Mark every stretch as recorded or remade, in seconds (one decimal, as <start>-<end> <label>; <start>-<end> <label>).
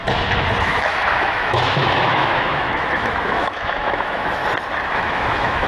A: 0.0-0.6 recorded; 0.6-4.4 remade; 4.4-4.9 recorded; 4.9-5.7 remade